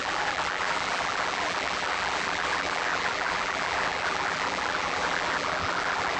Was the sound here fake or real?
fake